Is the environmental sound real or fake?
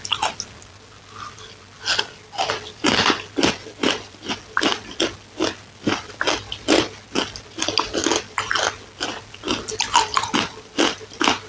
real